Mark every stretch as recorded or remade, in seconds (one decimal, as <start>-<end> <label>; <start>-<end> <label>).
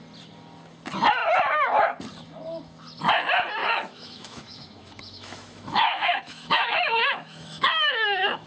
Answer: 0.0-3.6 recorded; 3.6-8.5 remade